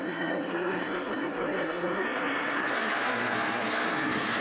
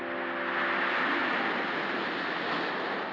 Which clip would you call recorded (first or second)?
second